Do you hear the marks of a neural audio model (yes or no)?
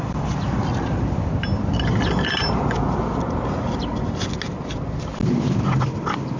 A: no